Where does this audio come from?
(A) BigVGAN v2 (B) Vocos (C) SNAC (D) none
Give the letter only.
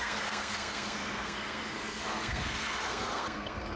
C